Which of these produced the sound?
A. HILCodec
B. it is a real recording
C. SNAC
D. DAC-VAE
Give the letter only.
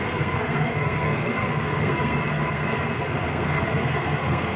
C